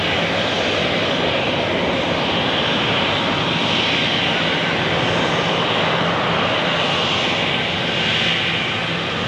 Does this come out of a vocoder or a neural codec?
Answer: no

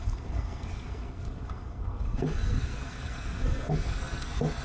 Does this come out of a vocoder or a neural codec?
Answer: yes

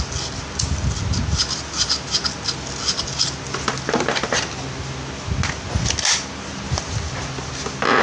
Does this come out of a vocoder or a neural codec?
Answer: no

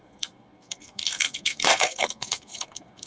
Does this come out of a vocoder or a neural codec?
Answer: yes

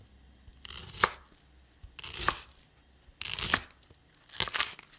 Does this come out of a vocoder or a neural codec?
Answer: no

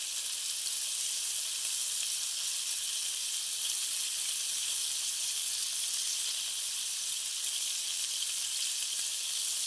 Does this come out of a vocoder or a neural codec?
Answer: no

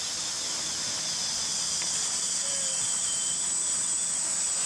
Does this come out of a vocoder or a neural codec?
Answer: no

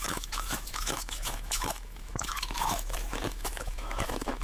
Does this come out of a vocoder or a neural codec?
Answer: yes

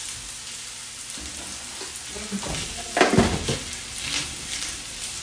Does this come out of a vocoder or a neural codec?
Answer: no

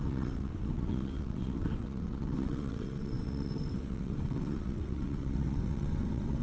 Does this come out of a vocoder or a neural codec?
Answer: yes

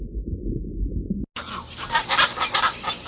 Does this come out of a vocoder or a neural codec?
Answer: no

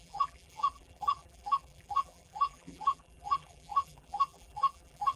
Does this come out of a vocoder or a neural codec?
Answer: yes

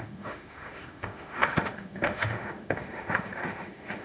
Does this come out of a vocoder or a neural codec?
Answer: yes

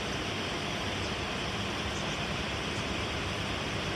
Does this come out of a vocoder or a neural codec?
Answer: yes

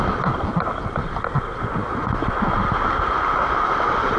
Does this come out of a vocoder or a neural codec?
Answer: no